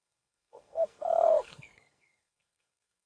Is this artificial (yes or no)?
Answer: yes